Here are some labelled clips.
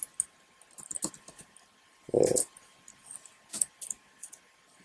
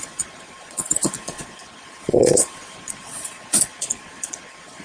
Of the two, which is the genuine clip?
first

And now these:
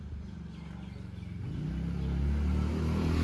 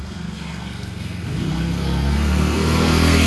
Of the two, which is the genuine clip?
first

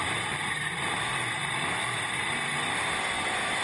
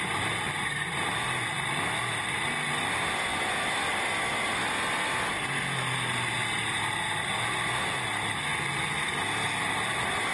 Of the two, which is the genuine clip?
second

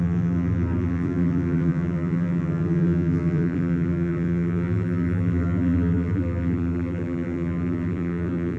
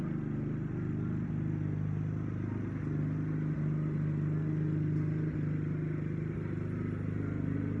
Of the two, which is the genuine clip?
second